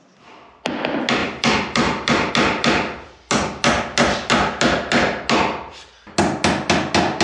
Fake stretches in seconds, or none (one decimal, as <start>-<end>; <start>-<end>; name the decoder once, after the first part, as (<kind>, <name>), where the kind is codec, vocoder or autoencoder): 1.2-2.3 (vocoder, BigVGAN v2)